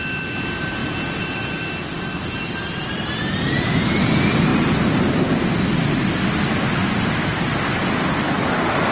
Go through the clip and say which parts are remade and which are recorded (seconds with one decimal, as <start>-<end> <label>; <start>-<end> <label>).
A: 0.0-0.8 recorded; 0.8-1.6 remade; 1.6-8.9 recorded